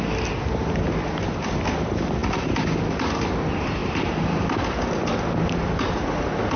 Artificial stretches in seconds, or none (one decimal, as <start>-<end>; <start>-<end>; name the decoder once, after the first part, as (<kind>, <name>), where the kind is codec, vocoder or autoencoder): none